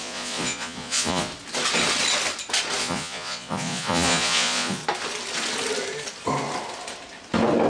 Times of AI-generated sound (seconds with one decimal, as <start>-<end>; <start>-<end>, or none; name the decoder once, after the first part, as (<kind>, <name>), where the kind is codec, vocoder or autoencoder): 0.0-1.3 (vocoder, Vocos); 2.8-4.8